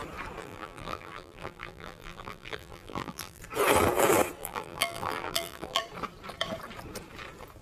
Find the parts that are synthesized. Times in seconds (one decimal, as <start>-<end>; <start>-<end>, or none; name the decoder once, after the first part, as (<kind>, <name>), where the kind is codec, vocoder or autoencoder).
0.4-3.4 (vocoder, BigVGAN v2); 4.4-5.8